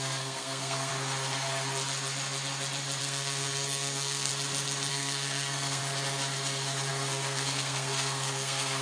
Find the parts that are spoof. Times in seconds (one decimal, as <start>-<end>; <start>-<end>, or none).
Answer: 0.0-0.9; 3.0-4.3; 4.9-5.8; 6.9-8.8